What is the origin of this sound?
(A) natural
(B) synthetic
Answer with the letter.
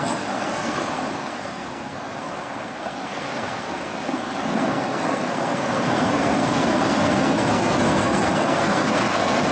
B